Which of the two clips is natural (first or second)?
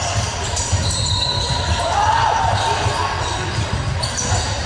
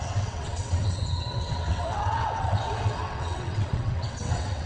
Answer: first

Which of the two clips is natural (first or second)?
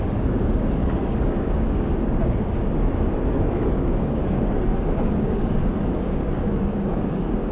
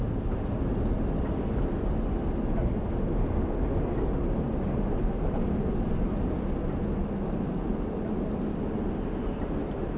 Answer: second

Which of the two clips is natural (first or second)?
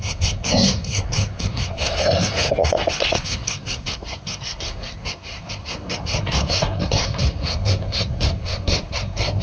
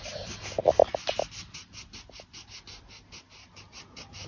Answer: second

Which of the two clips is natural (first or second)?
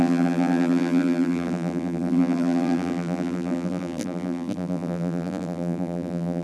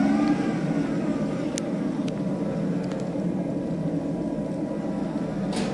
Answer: second